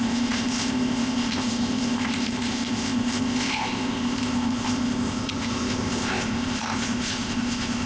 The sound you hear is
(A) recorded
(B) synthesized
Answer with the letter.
B